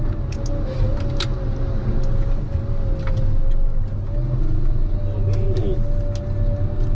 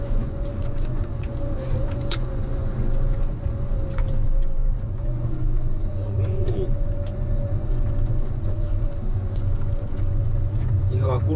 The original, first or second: first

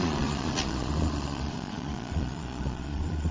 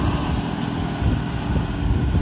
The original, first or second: second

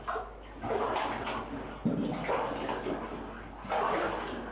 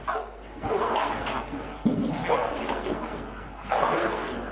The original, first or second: first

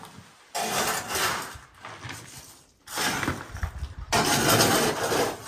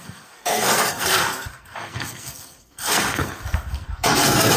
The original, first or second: first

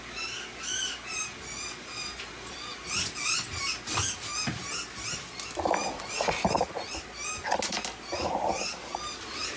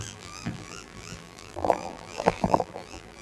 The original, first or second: first